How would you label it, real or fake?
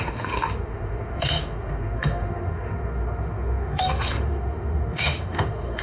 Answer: fake